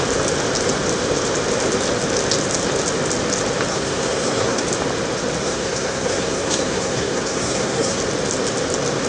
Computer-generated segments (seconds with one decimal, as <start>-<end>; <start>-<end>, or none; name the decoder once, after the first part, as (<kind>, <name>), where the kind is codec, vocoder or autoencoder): 3.7-4.6 (codec, SNAC); 5.4-8.0